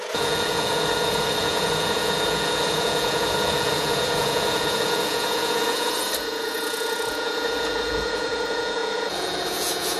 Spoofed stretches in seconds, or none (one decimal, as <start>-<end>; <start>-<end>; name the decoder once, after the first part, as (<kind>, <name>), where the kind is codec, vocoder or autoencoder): 0.0-10.0 (vocoder, Vocos)